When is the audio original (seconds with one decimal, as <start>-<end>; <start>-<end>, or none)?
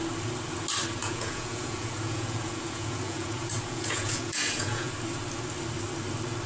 0.0-1.0; 4.9-6.5